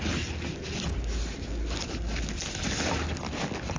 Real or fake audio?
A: real